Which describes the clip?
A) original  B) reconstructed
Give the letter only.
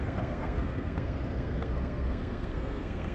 B